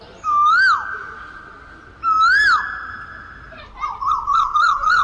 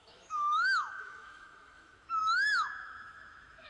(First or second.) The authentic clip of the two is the first